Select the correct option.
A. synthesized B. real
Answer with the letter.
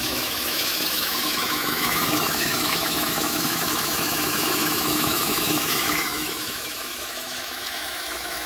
A